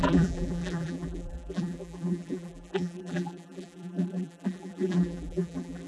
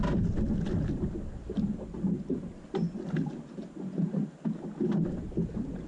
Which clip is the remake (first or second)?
first